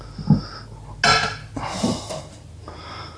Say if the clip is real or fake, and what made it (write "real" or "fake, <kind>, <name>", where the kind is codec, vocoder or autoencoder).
real